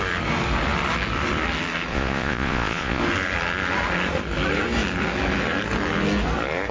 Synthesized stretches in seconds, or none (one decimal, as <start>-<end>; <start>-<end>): 1.9-3.0